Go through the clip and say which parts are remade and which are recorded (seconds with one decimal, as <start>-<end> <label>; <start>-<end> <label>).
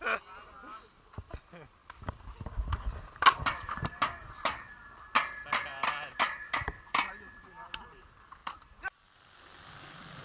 0.0-1.8 recorded; 1.8-3.1 remade; 3.1-5.7 recorded; 5.7-7.1 remade; 7.1-8.4 recorded; 8.4-9.4 remade; 9.4-10.2 recorded